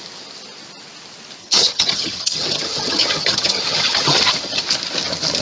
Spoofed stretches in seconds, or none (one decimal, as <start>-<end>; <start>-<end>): 1.4-4.6